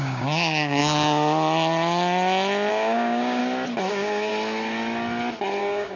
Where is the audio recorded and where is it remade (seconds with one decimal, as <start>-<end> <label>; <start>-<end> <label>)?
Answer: 0.0-0.8 remade; 0.8-2.7 recorded; 2.7-3.4 remade; 3.4-3.9 recorded; 3.9-4.3 remade; 4.3-5.6 recorded; 5.6-6.0 remade

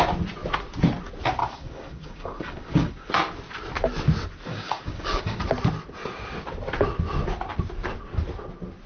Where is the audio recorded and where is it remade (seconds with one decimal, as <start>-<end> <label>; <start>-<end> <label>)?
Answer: 0.0-1.4 recorded; 1.4-3.1 remade; 3.1-4.5 recorded; 4.5-5.4 remade; 5.4-8.9 recorded